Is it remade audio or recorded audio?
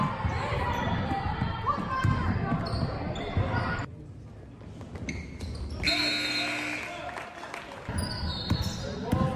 recorded